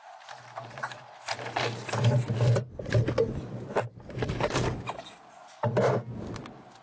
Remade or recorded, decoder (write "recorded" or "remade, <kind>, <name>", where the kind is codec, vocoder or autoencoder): recorded